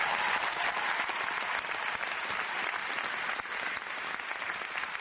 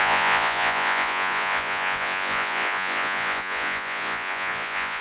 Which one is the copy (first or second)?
second